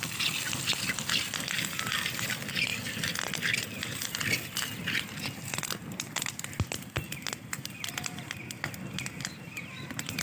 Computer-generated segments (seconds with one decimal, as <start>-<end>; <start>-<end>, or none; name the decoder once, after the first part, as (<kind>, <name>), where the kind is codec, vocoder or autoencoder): none